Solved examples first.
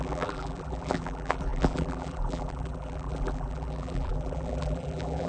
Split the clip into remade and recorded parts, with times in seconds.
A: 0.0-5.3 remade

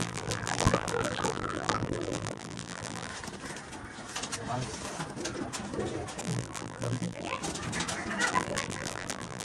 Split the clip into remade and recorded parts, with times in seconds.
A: 0.0-3.1 remade; 3.1-6.2 recorded; 6.2-7.4 remade; 7.4-8.3 recorded; 8.3-9.4 remade

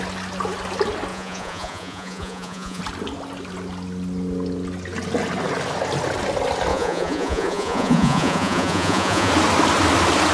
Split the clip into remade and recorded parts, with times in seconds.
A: 0.0-1.1 recorded; 1.1-2.8 remade; 2.8-6.7 recorded; 6.7-9.3 remade; 9.3-10.3 recorded

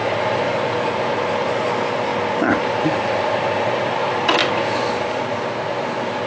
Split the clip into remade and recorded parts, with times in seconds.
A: 0.0-6.3 recorded

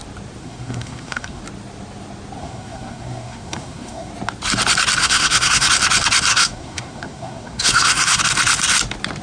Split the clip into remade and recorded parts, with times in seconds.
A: 0.0-0.4 recorded; 0.4-1.4 remade; 1.4-2.4 recorded; 2.4-4.1 remade; 4.1-5.0 recorded; 5.0-5.7 remade; 5.7-6.3 recorded; 6.3-8.2 remade; 8.2-9.2 recorded

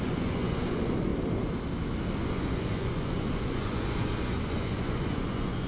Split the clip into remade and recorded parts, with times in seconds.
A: 0.0-1.1 remade; 1.1-2.2 recorded; 2.2-5.7 remade